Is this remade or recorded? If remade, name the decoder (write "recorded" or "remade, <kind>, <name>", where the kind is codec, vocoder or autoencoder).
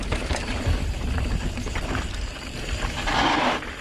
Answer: remade, vocoder, BigVGAN v2